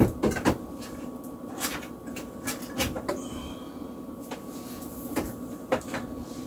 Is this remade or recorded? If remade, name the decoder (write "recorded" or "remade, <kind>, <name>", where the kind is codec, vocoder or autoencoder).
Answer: recorded